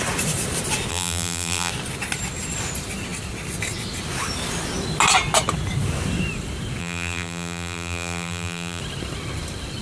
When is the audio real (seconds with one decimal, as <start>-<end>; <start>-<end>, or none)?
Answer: 0.0-0.9; 1.7-6.8; 8.8-9.8